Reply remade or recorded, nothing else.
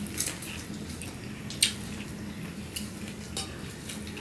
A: recorded